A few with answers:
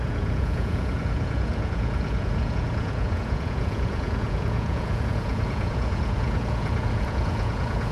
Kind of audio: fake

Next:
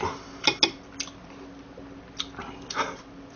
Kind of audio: real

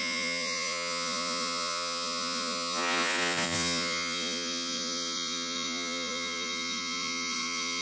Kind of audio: fake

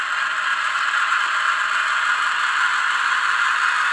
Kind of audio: real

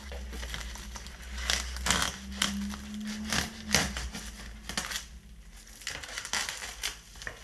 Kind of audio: real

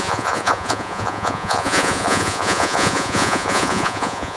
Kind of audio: fake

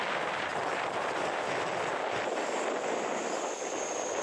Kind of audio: real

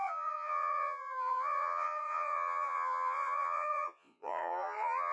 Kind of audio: fake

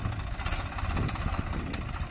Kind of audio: real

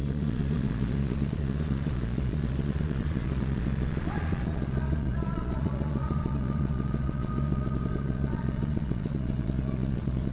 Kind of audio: fake